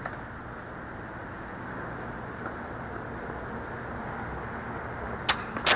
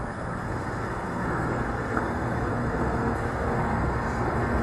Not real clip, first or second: second